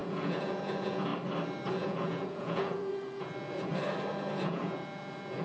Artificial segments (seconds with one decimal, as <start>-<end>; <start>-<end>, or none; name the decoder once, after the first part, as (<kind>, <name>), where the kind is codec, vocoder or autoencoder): 0.0-1.1 (vocoder, Vocos); 1.7-3.7; 4.3-5.4